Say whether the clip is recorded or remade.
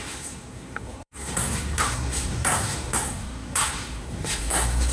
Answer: remade